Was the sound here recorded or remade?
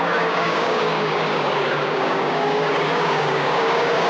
remade